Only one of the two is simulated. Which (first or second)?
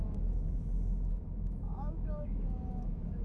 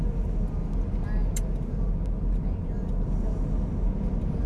first